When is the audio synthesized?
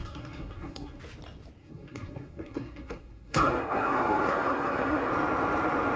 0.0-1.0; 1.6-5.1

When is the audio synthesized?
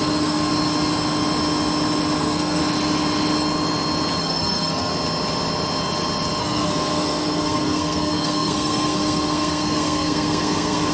0.0-0.5; 2.2-2.6; 4.2-4.9; 6.4-10.9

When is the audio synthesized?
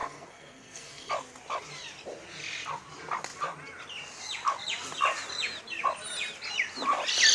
0.0-1.1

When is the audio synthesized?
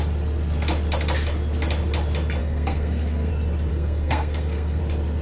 2.4-3.3; 3.7-4.8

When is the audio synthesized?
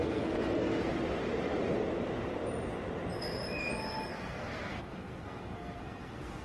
0.0-0.9; 4.1-6.4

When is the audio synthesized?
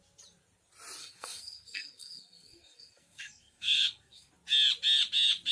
1.0-4.3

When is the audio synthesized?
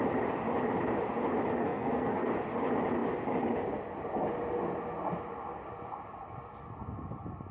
1.6-2.3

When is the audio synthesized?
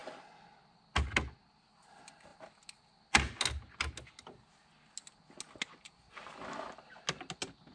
none